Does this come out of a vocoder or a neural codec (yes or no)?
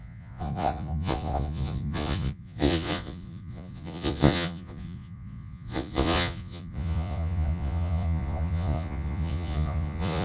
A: yes